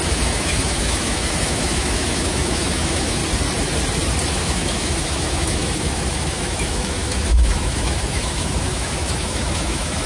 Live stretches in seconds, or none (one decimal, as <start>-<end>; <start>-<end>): 3.2-4.3